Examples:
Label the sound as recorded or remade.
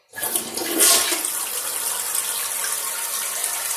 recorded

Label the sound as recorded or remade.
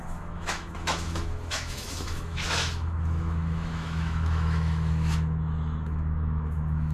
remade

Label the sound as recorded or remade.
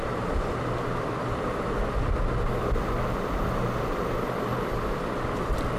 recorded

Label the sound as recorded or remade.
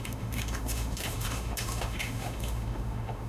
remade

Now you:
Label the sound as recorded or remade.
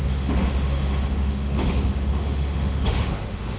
remade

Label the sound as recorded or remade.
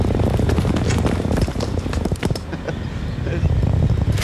recorded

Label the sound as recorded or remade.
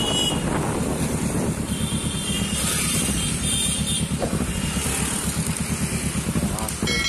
recorded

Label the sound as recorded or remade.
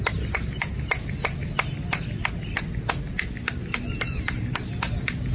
recorded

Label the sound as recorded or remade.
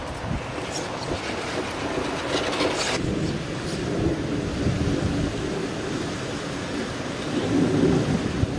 recorded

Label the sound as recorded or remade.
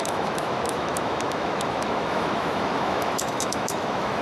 remade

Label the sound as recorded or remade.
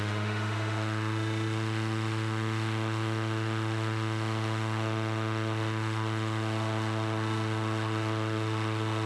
remade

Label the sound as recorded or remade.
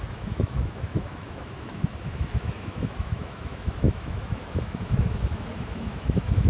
remade